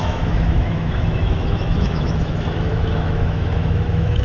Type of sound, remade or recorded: remade